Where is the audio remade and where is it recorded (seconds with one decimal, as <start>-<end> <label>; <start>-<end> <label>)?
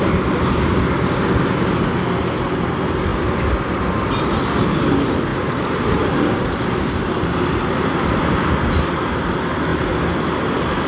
0.0-5.3 recorded; 5.3-8.2 remade; 8.2-10.9 recorded